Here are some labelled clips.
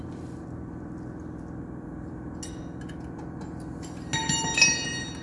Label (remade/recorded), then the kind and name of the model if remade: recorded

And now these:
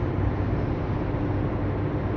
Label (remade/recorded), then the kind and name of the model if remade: recorded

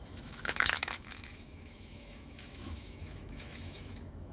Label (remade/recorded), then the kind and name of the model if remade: remade, autoencoder, DAC-VAE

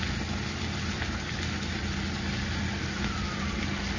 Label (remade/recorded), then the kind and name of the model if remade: recorded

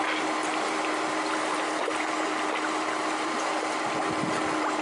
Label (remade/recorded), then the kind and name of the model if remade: recorded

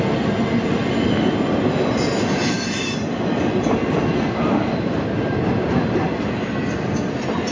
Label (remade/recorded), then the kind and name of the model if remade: recorded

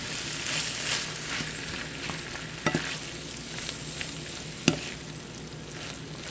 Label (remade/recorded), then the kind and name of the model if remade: recorded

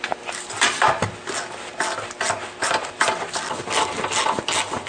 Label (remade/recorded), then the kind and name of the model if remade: recorded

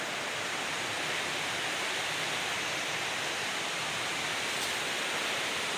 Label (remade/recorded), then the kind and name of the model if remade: recorded